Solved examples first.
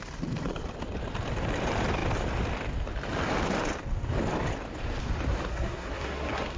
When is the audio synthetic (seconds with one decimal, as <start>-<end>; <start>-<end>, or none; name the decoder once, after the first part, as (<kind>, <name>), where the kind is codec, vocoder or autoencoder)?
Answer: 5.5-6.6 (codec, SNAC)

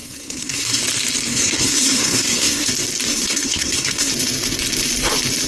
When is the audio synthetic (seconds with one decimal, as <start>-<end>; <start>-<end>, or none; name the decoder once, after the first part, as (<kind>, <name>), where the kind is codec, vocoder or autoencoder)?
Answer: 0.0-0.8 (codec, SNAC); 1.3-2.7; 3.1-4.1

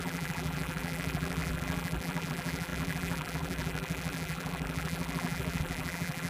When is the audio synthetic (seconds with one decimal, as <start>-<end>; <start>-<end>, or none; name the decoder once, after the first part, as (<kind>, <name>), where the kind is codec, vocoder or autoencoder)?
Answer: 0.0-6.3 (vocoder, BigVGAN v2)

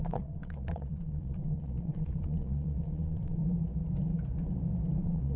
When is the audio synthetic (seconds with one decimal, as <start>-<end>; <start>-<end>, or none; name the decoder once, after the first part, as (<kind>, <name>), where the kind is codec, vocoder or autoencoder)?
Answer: 0.0-3.4 (vocoder, Vocos); 5.0-5.4

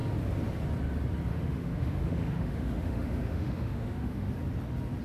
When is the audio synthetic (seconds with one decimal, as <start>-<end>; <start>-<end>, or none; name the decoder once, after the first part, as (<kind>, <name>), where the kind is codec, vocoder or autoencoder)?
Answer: 1.3-4.3 (autoencoder, DAC-VAE)

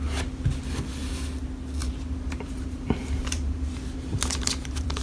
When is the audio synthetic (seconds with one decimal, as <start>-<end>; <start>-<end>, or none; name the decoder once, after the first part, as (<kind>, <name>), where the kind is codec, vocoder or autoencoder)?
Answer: 1.8-5.0 (vocoder, BigVGAN v2)

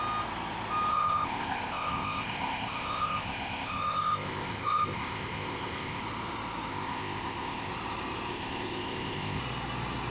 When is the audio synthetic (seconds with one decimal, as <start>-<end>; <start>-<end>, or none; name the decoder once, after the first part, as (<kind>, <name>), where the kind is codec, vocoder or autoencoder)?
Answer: 0.9-6.0 (codec, ZipCodec); 6.7-7.7; 8.3-9.4

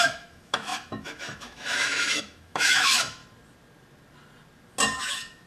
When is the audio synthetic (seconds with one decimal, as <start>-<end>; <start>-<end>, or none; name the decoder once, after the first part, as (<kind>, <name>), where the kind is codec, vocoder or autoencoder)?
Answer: 0.0-3.2 (autoencoder, DAC-VAE); 5.0-5.5